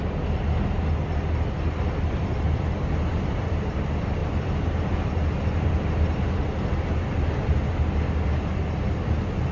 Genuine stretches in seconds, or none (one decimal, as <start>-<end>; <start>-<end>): 0.0-9.5